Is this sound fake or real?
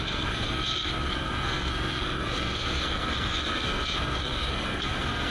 fake